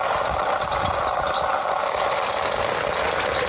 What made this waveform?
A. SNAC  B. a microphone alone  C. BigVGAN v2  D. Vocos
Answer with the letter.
B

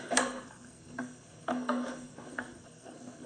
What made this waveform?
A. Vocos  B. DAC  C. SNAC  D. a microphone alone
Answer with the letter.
C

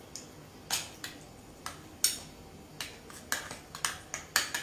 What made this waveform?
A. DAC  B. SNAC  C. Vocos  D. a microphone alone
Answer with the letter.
D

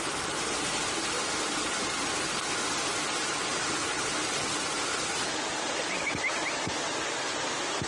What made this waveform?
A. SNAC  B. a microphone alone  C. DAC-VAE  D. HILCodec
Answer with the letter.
B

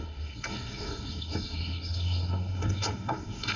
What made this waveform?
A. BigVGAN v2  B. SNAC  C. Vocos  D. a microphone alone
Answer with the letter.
B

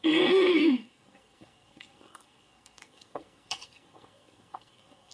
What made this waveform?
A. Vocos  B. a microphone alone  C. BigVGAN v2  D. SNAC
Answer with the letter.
D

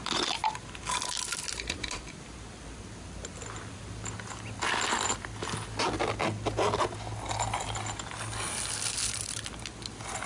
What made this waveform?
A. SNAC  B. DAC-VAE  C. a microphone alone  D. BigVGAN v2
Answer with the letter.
C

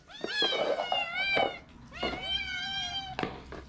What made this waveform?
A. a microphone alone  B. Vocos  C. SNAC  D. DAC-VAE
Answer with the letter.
A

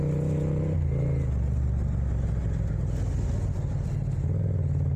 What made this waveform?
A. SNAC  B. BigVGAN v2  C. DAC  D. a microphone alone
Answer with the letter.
D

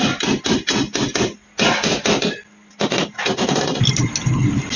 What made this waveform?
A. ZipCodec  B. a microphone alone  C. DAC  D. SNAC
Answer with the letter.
B